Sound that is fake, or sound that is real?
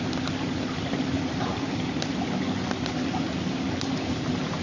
real